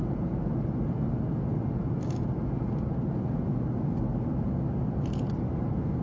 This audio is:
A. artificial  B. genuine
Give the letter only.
B